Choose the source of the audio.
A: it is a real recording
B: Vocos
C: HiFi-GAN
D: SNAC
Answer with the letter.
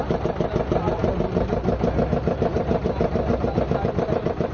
A